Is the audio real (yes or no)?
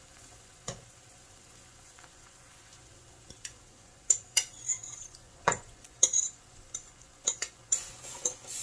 no